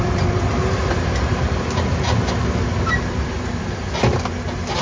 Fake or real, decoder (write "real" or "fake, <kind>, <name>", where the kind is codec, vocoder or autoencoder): real